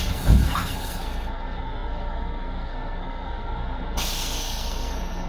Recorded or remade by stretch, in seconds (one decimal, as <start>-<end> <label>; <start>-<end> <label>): 0.0-5.3 remade